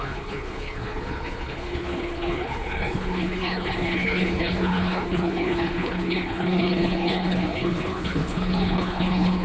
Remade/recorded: remade